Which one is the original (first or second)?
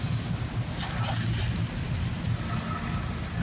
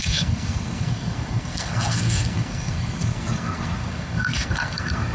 first